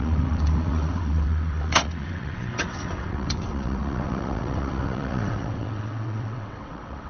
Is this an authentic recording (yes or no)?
no